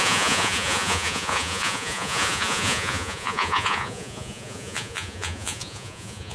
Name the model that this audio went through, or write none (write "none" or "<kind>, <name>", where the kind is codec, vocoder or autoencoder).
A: vocoder, Vocos